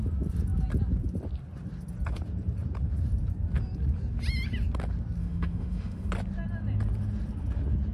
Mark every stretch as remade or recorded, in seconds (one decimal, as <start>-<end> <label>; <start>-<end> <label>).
0.0-5.2 recorded; 5.2-6.1 remade; 6.1-7.9 recorded